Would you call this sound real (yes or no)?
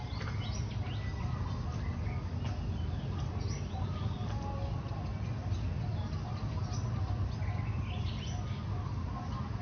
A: yes